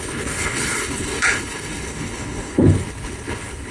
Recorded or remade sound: remade